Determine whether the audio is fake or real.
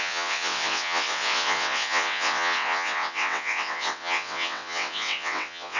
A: fake